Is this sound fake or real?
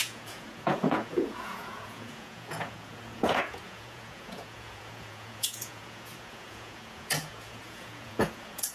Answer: fake